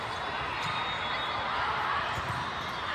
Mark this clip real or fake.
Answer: real